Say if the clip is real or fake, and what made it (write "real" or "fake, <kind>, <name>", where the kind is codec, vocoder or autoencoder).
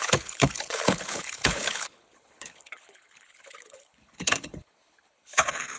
fake, codec, HILCodec